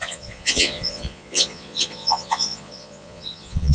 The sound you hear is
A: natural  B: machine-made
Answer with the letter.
B